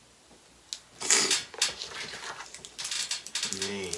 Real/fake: real